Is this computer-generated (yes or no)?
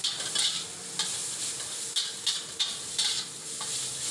no